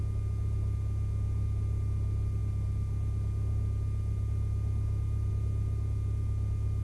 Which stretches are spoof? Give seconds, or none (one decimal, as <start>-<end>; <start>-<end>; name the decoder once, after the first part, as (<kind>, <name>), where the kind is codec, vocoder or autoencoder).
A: none